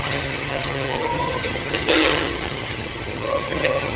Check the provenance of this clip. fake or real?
fake